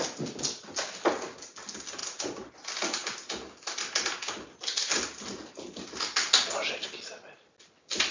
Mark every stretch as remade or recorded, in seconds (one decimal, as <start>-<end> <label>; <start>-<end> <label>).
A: 0.0-8.1 recorded